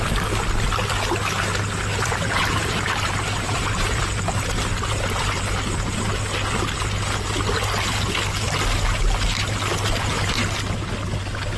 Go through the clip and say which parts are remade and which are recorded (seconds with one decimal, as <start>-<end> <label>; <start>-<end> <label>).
0.0-1.9 recorded; 1.9-5.4 remade; 5.4-11.6 recorded